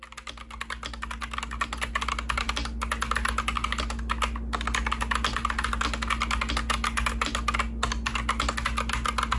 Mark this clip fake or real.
real